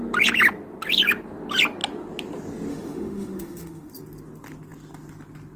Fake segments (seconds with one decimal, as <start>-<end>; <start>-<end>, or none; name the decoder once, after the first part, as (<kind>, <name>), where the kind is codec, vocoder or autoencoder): 2.7-3.9 (autoencoder, DAC-VAE)